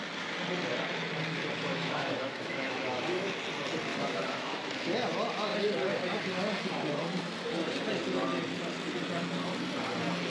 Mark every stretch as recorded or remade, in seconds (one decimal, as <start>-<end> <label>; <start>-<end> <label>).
0.0-1.7 recorded; 1.7-3.3 remade; 3.3-3.9 recorded; 3.9-4.7 remade; 4.7-10.3 recorded